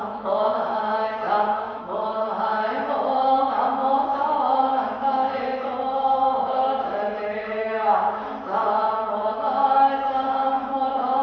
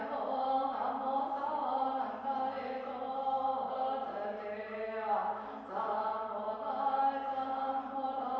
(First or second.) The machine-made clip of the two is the first